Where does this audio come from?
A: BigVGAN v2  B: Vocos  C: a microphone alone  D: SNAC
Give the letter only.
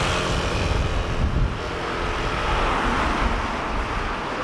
C